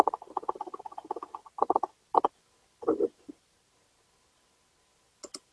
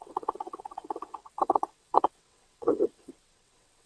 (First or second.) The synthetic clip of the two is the second